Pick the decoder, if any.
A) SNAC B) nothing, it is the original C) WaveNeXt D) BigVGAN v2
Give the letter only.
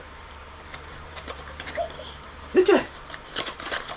D